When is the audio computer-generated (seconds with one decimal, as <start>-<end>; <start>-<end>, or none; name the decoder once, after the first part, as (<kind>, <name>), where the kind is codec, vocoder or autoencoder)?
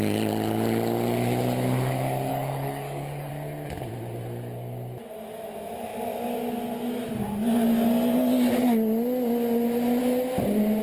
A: 2.3-3.3 (codec, DAC)